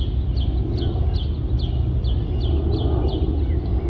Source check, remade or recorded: recorded